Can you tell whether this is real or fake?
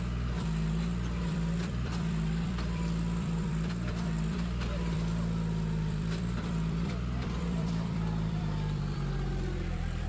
fake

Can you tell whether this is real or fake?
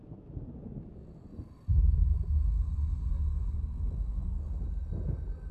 real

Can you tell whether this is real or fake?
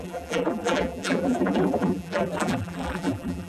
fake